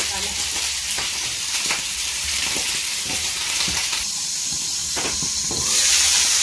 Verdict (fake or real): fake